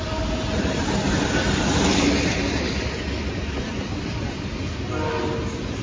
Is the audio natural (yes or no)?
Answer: yes